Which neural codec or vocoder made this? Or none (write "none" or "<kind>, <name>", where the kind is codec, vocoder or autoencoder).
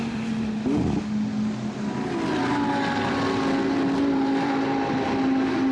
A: none